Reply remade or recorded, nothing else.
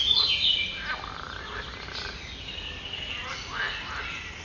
recorded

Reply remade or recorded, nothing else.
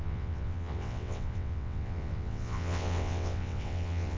remade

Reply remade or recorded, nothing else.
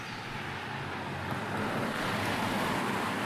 recorded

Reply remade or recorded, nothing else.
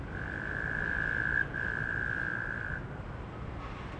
recorded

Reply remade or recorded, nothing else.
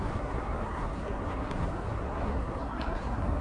remade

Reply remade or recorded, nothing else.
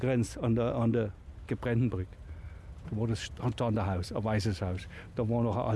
recorded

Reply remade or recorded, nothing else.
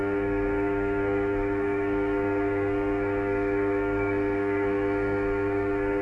remade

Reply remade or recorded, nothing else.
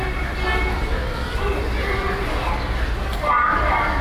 recorded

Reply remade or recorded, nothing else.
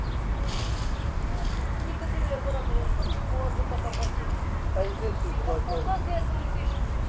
recorded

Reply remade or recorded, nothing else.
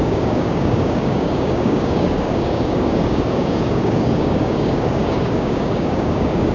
remade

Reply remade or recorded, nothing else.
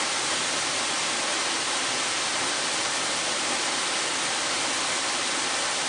recorded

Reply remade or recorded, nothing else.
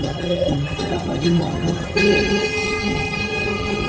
remade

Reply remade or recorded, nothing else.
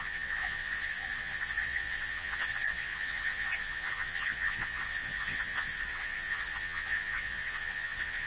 remade